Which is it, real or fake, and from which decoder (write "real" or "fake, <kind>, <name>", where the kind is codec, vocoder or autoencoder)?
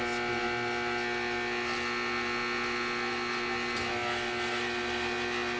real